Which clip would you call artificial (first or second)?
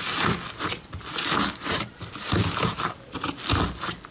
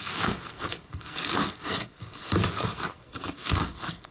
second